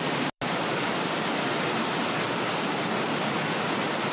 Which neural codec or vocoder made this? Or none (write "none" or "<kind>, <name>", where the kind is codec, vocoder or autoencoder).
none